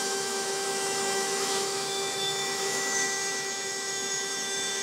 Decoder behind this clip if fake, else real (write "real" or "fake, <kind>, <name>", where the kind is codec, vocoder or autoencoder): fake, autoencoder, DAC-VAE